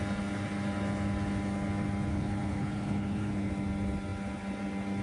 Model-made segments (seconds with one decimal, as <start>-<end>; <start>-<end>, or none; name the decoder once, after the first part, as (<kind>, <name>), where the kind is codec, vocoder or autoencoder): 2.1-3.5 (codec, HILCodec)